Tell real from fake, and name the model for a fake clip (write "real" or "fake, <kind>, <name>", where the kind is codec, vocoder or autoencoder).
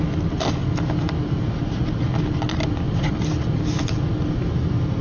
real